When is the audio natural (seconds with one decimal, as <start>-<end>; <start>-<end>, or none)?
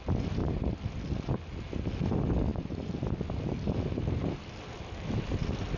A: 0.0-0.4; 1.3-5.8